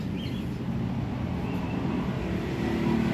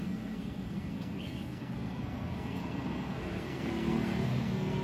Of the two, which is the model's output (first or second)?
second